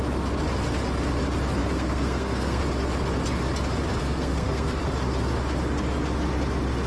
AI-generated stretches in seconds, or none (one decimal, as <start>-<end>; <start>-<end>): 1.6-2.6; 4.0-4.8